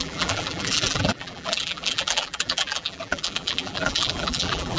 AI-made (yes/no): yes